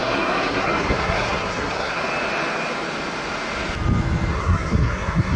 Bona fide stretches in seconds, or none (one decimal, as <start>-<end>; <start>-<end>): 2.0-4.3